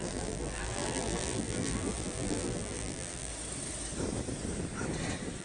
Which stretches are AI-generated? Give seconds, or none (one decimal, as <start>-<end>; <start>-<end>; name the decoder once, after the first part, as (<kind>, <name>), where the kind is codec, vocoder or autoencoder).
0.0-3.3 (vocoder, BigVGAN v2)